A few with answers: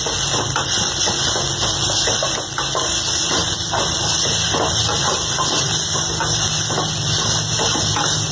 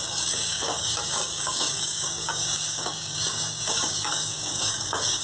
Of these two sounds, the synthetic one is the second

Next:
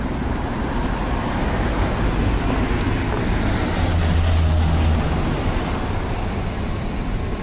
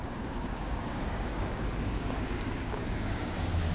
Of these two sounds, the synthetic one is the second